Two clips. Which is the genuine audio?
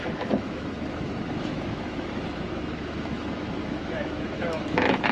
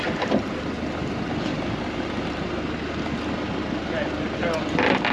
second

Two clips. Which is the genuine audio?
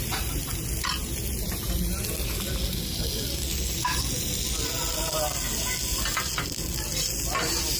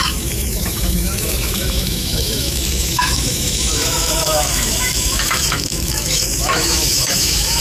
first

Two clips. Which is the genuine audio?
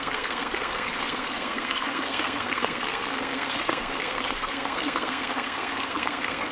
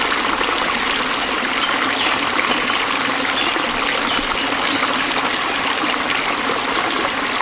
second